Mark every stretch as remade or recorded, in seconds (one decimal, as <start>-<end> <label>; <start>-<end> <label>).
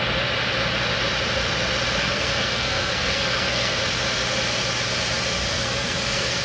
0.0-2.0 recorded; 2.0-3.8 remade; 3.8-5.5 recorded; 5.5-6.4 remade